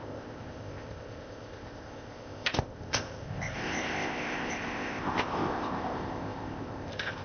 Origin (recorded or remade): remade